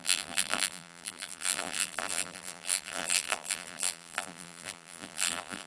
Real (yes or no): no